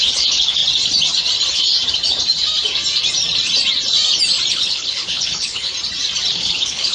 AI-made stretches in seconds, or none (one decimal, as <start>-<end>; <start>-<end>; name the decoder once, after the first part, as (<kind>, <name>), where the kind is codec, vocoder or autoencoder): 0.0-0.6 (codec, HILCodec); 4.5-5.7; 6.3-6.9